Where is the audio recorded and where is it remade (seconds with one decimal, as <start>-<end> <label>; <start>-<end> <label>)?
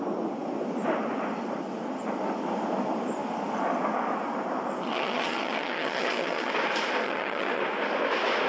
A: 0.0-4.8 recorded; 4.8-6.5 remade; 6.5-7.0 recorded; 7.0-7.6 remade; 7.6-8.5 recorded